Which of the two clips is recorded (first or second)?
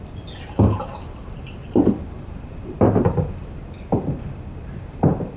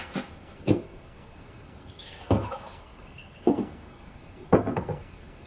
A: first